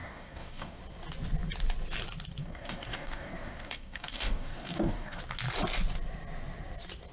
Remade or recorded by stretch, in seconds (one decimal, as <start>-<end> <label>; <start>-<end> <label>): 0.0-0.8 remade; 0.8-2.4 recorded; 2.4-5.2 remade; 5.2-7.1 recorded